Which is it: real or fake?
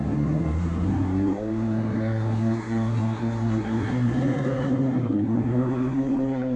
fake